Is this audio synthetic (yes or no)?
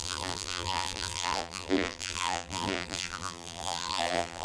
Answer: yes